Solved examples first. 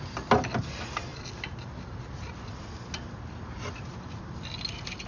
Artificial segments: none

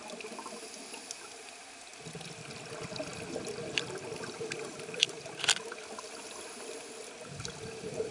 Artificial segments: none

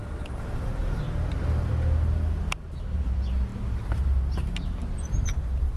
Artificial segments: none

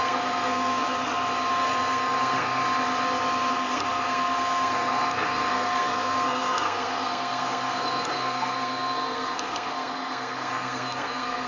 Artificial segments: 0.0-0.8 (codec, SNAC); 1.5-2.6; 3.5-11.5

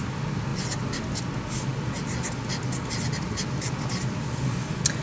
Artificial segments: none